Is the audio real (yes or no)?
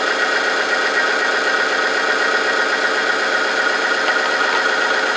yes